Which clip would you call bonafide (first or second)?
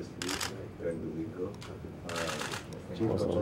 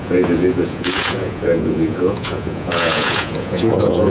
first